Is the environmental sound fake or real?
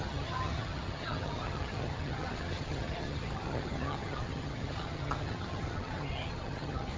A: fake